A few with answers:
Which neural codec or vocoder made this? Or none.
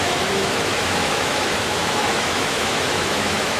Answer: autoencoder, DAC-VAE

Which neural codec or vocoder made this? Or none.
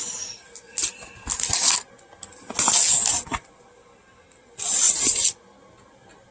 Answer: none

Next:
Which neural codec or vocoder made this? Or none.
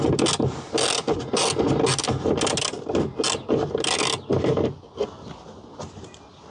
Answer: none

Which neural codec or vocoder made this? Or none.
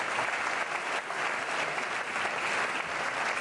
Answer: none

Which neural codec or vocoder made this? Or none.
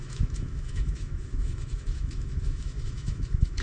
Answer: autoencoder, DAC-VAE